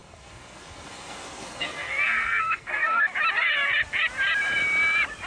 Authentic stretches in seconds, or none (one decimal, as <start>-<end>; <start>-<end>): 3.1-5.3